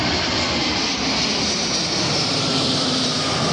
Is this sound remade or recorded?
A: remade